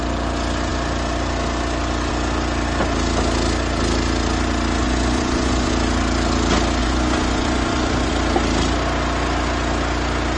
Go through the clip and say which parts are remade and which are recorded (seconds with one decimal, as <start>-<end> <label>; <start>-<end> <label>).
0.0-4.8 recorded; 4.8-5.7 remade; 5.7-6.8 recorded; 6.8-8.1 remade; 8.1-10.4 recorded